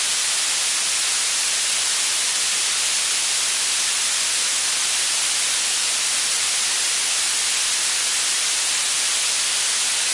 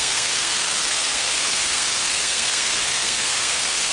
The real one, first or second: first